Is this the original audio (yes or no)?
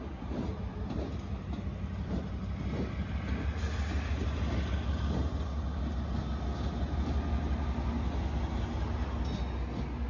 yes